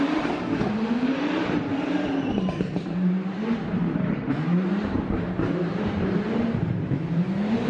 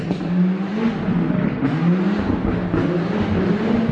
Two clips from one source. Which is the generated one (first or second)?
first